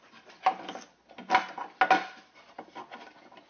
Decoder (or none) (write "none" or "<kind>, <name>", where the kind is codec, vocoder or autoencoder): none